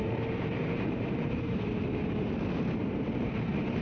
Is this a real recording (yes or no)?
no